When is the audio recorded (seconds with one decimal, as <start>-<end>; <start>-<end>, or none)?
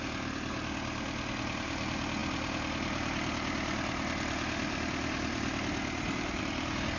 0.0-7.0